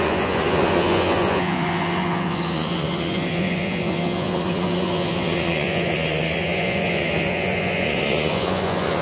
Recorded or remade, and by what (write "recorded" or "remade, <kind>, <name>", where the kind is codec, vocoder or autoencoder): remade, vocoder, Vocos